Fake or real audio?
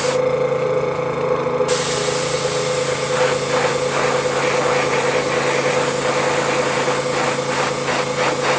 real